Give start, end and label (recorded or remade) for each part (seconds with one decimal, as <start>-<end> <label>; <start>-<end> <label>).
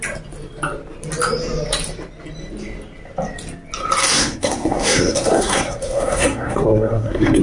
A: 0.0-4.1 recorded; 4.1-7.4 remade